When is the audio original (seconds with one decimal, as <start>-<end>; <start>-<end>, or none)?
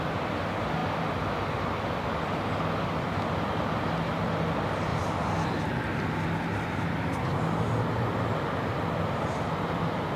0.0-10.2